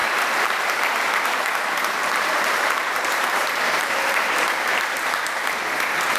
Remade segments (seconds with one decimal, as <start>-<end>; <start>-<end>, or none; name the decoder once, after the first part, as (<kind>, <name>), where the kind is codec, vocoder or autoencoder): 0.0-0.9 (vocoder, BigVGAN v2); 2.0-5.7